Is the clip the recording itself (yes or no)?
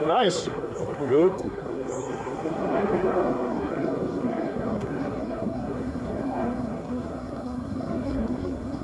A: no